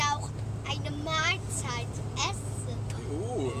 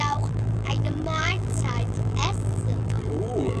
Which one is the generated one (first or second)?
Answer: second